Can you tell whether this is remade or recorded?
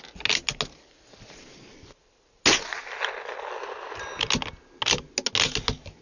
recorded